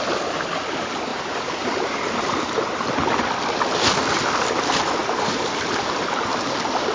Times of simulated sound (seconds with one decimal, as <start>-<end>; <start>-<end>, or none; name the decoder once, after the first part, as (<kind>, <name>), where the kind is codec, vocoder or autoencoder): 1.1-2.4 (vocoder, BigVGAN v2); 5.0-6.5